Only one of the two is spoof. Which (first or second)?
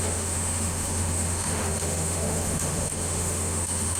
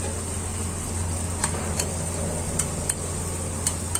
first